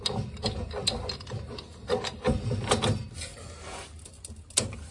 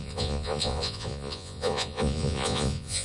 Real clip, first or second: first